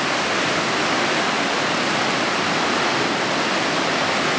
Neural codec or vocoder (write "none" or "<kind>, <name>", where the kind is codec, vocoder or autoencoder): none